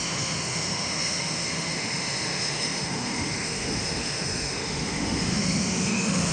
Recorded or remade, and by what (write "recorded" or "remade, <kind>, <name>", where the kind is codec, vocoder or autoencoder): remade, autoencoder, DAC-VAE